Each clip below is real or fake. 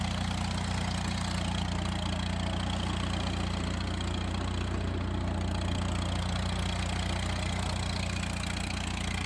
real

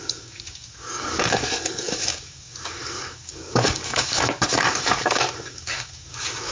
fake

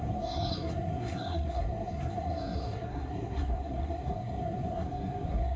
fake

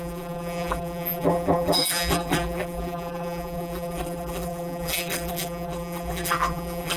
fake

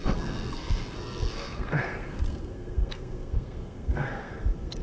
fake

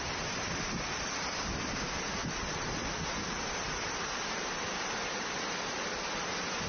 real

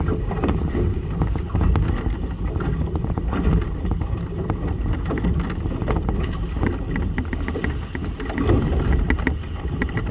real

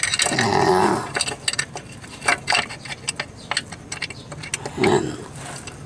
real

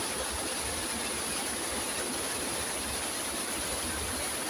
real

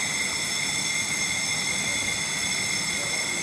real